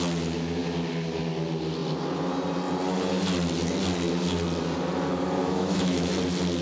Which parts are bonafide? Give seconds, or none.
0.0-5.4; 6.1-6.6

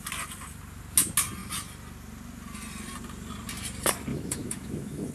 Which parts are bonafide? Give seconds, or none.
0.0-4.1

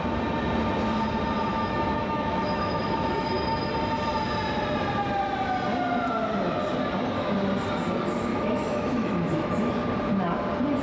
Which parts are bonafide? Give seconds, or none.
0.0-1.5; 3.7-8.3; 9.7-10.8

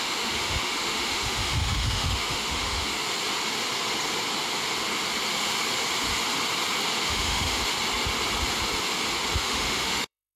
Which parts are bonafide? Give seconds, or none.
2.9-7.0; 7.7-9.4

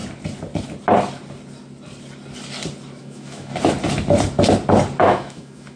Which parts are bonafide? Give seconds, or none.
0.0-3.0; 3.5-5.0

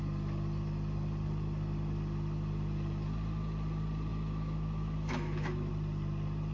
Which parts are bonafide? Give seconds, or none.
0.0-4.1; 5.7-6.5